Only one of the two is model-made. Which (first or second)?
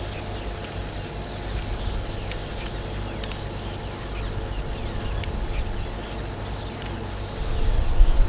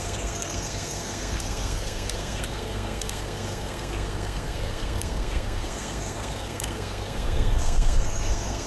second